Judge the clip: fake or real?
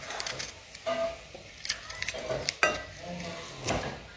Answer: real